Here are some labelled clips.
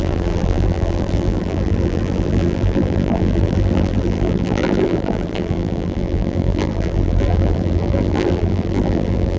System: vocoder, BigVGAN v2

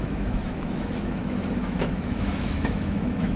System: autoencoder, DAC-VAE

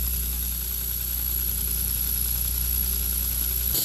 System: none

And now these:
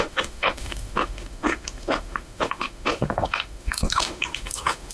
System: autoencoder, DAC-VAE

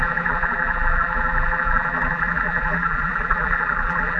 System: vocoder, BigVGAN v2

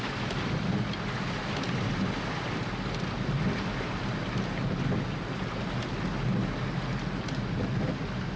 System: none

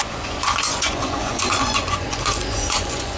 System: vocoder, Vocos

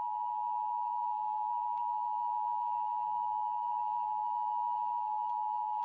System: codec, SNAC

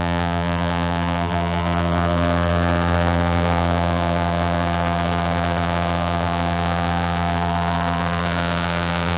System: vocoder, BigVGAN v2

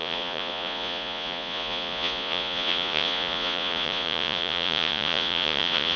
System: vocoder, Vocos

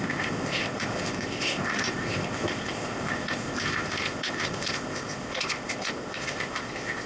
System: codec, ZipCodec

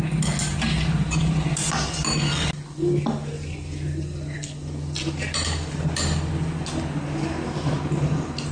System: none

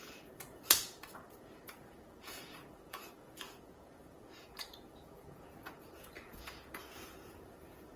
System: vocoder, Vocos